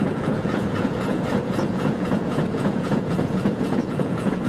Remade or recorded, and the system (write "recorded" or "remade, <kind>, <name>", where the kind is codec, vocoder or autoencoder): remade, vocoder, Vocos